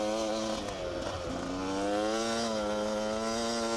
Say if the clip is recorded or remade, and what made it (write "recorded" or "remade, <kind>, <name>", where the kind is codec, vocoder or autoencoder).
recorded